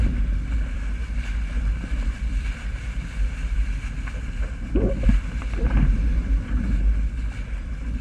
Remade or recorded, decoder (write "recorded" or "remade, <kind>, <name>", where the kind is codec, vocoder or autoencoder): recorded